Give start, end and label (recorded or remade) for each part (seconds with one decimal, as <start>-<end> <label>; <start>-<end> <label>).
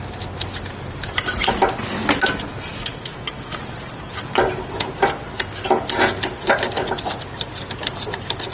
0.0-2.7 recorded; 2.7-3.6 remade; 3.6-8.5 recorded